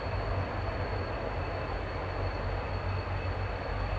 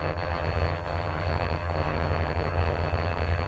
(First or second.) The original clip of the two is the first